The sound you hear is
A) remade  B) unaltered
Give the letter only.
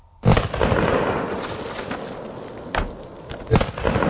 B